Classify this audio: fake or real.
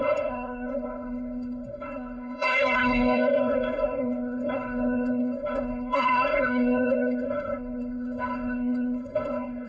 fake